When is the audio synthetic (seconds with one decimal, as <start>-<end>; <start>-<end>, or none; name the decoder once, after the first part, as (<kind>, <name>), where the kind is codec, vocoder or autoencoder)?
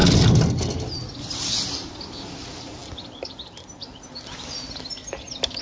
none